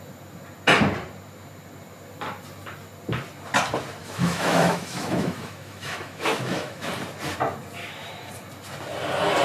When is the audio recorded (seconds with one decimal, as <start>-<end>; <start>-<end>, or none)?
0.0-4.0; 6.9-7.8; 8.3-9.4